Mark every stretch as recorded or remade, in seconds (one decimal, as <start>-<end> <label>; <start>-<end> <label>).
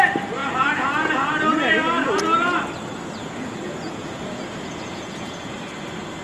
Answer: 0.0-0.4 recorded; 0.4-2.2 remade; 2.2-3.2 recorded; 3.2-5.5 remade; 5.5-6.2 recorded